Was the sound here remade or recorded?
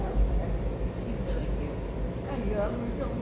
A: recorded